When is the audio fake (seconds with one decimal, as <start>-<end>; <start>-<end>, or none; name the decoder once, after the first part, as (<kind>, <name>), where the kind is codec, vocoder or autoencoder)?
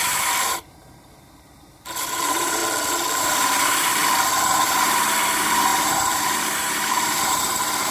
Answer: 0.0-2.6 (vocoder, BigVGAN v2); 3.2-4.0; 4.5-7.9